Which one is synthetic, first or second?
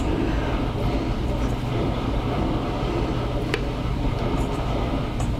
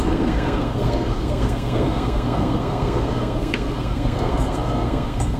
second